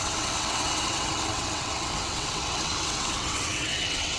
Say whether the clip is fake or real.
fake